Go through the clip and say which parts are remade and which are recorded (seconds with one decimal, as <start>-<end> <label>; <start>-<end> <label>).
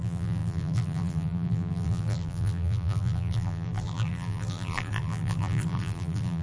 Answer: 0.0-6.4 remade